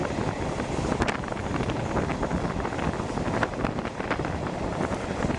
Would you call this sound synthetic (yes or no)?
no